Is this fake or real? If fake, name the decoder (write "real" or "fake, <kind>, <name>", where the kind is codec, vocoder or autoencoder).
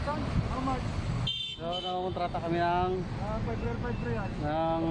real